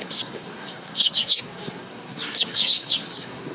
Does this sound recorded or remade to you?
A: remade